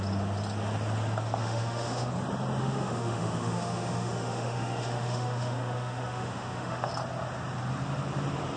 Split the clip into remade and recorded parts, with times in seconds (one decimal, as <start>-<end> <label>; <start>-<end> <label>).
0.0-1.4 recorded; 1.4-2.1 remade; 2.1-2.6 recorded; 2.6-6.9 remade; 6.9-8.6 recorded